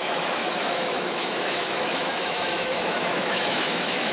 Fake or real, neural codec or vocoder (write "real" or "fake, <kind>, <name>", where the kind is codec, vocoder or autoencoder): fake, autoencoder, DAC-VAE